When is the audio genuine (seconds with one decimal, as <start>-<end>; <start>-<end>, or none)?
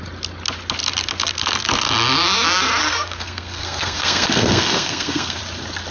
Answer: 0.0-2.8; 5.4-5.9